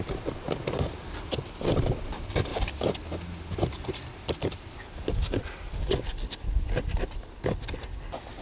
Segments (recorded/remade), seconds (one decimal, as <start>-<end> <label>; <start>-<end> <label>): 0.0-8.4 recorded